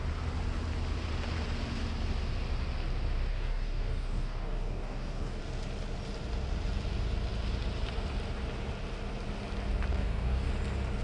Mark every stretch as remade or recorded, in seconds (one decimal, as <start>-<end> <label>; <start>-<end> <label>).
0.0-3.3 recorded; 3.3-5.4 remade; 5.4-9.9 recorded; 9.9-10.5 remade; 10.5-11.0 recorded